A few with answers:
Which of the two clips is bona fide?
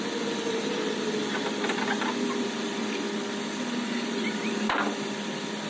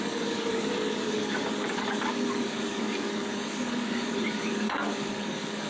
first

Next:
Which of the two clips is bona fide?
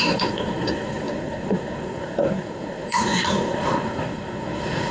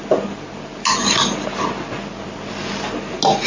second